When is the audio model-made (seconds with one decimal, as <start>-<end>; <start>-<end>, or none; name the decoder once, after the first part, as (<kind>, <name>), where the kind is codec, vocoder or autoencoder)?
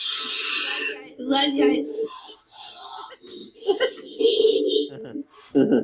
none